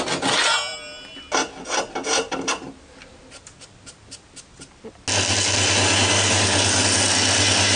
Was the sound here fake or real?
real